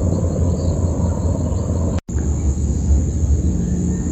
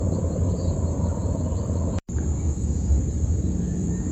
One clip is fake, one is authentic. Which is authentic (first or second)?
first